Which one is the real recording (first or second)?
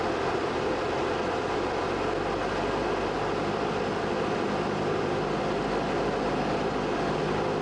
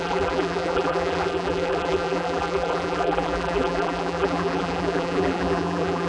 first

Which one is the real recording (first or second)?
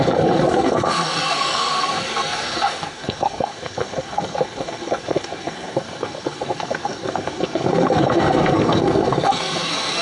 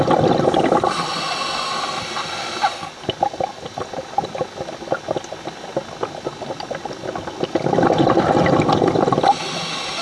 second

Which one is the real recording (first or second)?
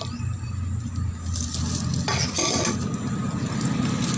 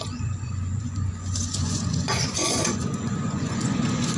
first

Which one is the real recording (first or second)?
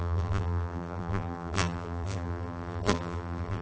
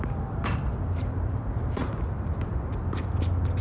second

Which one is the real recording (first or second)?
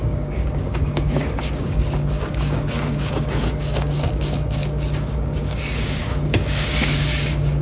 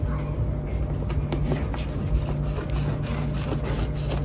second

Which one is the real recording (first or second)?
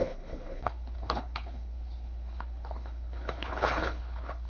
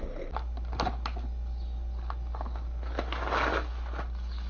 second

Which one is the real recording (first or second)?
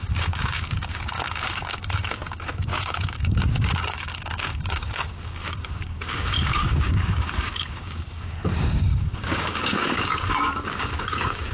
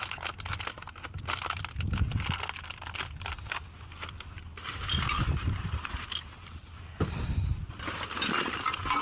second